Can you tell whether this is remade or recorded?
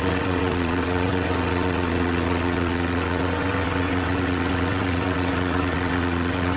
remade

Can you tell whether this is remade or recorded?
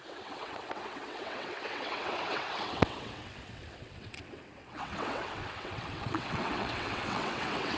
remade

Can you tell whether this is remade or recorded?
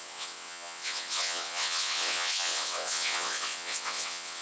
remade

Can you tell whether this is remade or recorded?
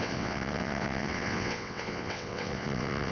remade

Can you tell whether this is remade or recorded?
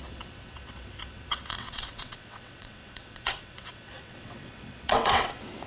remade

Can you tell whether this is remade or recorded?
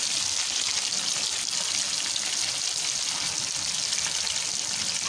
recorded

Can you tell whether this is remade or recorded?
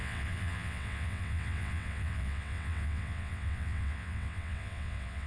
remade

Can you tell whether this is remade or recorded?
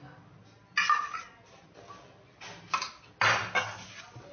recorded